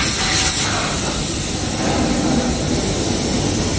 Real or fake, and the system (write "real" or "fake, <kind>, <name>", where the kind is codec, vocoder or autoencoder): real